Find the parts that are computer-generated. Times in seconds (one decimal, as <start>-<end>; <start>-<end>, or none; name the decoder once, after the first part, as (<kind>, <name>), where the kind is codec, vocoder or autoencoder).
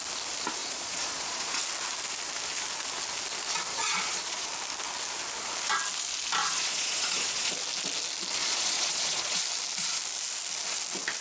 0.6-1.6 (vocoder, Vocos); 3.7-4.5; 6.4-7.5; 8.4-9.4